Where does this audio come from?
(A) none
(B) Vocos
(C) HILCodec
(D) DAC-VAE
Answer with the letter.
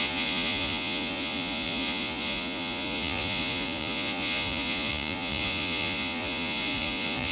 B